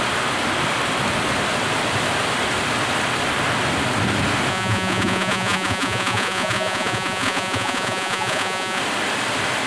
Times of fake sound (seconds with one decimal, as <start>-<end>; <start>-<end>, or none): 4.5-8.8